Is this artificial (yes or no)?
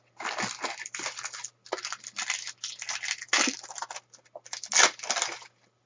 no